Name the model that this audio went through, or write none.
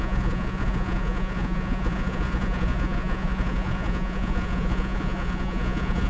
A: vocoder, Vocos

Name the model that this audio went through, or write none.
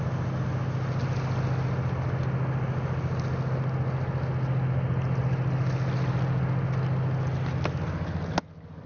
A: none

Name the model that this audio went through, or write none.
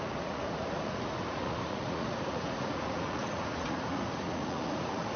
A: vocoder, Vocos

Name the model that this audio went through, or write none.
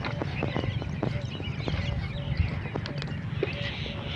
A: none